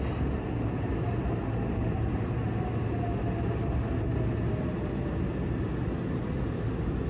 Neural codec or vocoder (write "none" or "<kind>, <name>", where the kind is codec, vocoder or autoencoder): none